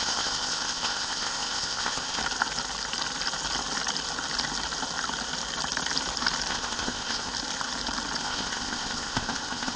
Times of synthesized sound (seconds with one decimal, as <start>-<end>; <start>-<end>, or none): 0.0-2.2; 6.5-7.3; 8.2-9.8

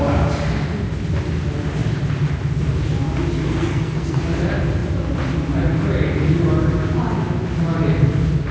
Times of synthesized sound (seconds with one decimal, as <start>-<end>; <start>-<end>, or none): 3.4-4.2